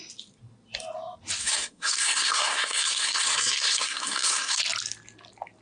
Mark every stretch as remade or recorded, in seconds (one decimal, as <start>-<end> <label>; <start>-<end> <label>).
0.0-1.4 recorded; 1.4-4.6 remade; 4.6-5.6 recorded